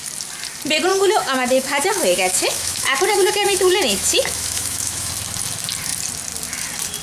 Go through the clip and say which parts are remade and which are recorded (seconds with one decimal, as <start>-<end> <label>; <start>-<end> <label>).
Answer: 0.0-0.9 recorded; 0.9-5.1 remade; 5.1-7.0 recorded